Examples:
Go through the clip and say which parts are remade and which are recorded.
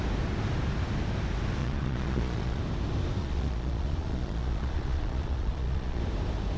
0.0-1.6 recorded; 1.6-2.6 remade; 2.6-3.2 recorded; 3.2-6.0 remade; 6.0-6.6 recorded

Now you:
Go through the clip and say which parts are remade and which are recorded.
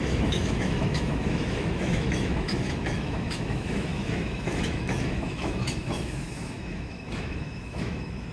0.0-8.3 remade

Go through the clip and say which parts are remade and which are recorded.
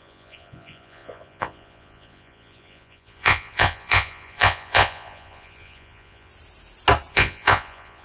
0.0-6.3 remade; 6.3-7.1 recorded; 7.1-8.0 remade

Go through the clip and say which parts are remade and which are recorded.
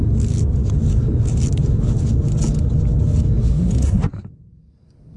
0.0-3.4 recorded; 3.4-4.1 remade; 4.1-5.2 recorded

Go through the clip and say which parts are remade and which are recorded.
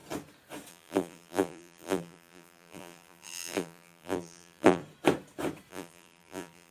0.0-0.7 recorded; 0.7-4.8 remade; 4.8-5.7 recorded; 5.7-6.7 remade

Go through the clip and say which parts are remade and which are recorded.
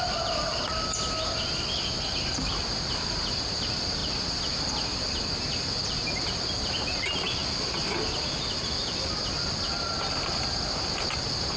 0.0-11.6 recorded